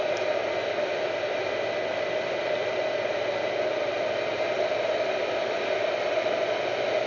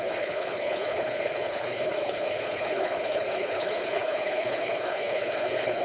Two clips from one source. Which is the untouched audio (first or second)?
first